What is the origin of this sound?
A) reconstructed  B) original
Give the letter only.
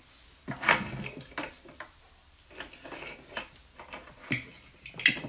B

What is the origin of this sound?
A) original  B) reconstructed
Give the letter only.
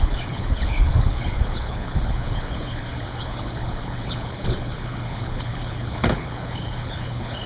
B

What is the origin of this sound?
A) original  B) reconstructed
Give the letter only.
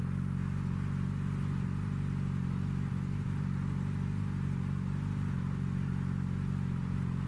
A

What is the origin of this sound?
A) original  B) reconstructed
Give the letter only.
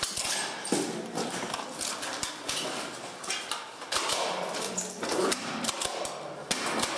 A